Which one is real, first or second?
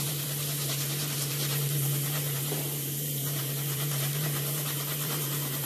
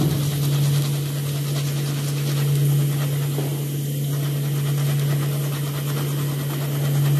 second